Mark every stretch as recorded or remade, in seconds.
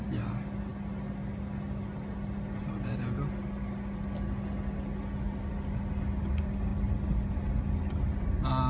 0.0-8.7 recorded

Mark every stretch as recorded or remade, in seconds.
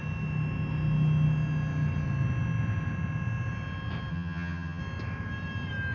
0.0-4.1 recorded; 4.1-4.8 remade; 4.8-5.9 recorded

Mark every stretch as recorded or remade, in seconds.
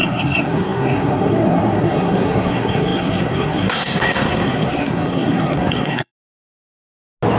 0.0-6.1 remade; 6.1-7.4 recorded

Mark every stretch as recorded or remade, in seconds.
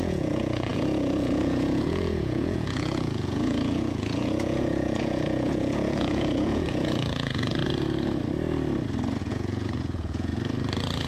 0.0-7.6 remade; 7.6-9.2 recorded; 9.2-10.3 remade; 10.3-11.1 recorded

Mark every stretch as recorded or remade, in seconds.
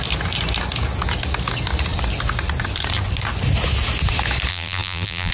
0.0-4.5 recorded; 4.5-5.3 remade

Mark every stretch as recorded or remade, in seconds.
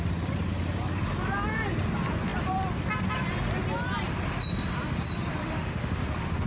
0.0-5.4 recorded; 5.4-6.0 remade; 6.0-6.5 recorded